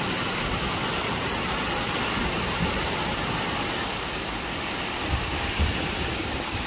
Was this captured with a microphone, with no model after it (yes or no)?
yes